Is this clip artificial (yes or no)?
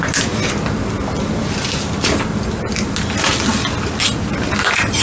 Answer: no